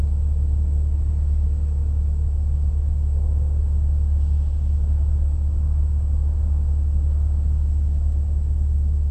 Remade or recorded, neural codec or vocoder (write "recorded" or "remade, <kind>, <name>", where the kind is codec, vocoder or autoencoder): recorded